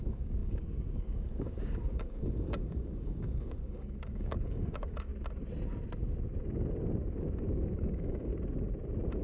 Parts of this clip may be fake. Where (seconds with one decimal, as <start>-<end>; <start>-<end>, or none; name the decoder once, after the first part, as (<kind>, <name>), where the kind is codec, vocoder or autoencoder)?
0.0-5.1 (codec, DAC); 7.5-8.3